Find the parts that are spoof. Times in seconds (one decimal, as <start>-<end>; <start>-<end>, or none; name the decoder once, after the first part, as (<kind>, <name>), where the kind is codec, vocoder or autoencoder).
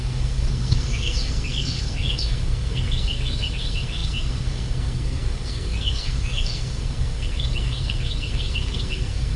0.0-9.4 (codec, SNAC)